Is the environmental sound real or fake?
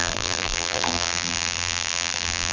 fake